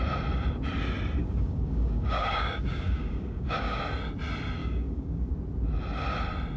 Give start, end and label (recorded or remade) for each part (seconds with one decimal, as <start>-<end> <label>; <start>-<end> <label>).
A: 0.0-1.2 recorded; 1.2-3.8 remade; 3.8-4.6 recorded; 4.6-5.3 remade; 5.3-6.6 recorded